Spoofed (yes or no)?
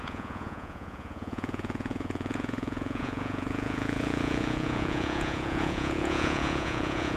yes